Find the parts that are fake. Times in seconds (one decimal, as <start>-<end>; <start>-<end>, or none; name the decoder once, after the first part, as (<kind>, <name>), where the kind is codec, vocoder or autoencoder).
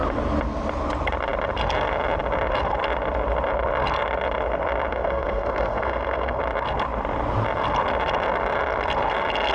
4.9-6.4 (codec, SNAC)